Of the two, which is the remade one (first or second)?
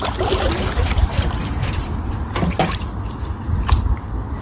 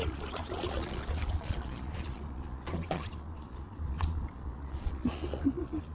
second